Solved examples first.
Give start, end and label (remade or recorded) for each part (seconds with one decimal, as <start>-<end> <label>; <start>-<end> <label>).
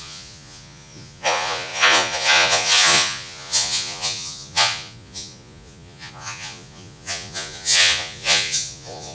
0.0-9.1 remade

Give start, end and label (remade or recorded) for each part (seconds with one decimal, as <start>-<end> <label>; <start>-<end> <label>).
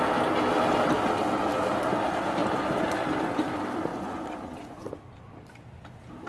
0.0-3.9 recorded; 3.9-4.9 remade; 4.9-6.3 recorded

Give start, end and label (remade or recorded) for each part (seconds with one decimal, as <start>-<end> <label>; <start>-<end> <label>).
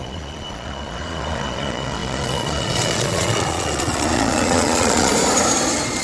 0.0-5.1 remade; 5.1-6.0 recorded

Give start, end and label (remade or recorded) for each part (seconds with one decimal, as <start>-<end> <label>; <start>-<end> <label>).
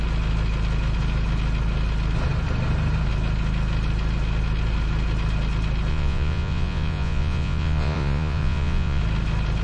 0.0-5.9 recorded; 5.9-9.0 remade; 9.0-9.6 recorded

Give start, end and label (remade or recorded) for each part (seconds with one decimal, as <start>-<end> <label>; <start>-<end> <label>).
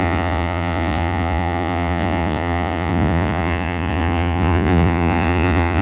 0.0-5.8 remade